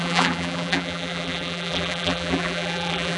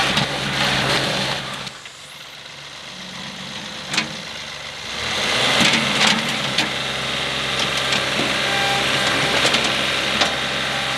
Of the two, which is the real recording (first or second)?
second